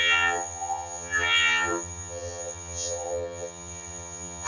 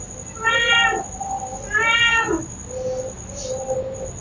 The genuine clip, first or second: second